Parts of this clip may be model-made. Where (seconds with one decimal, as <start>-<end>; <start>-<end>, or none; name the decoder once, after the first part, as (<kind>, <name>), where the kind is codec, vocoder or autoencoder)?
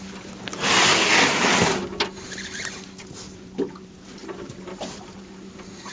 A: 4.2-5.1 (vocoder, BigVGAN v2)